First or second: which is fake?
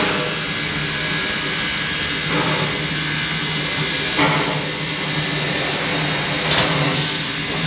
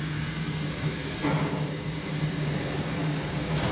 second